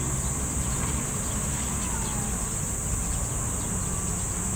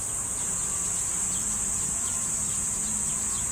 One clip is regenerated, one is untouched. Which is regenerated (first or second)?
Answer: second